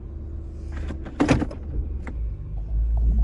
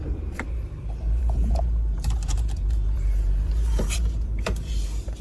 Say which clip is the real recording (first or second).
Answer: first